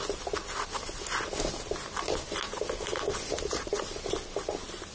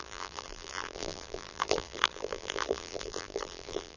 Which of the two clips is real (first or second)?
first